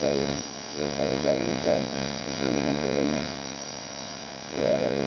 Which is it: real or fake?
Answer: fake